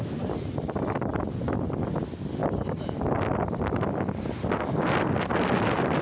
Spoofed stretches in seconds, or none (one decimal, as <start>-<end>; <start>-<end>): none